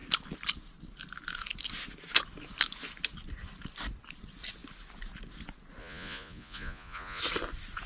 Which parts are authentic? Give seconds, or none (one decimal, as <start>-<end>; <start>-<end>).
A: 0.0-5.8; 7.2-7.9